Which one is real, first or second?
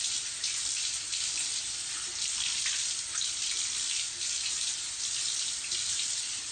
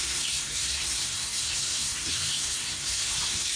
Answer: first